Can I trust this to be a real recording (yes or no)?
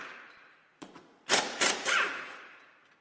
no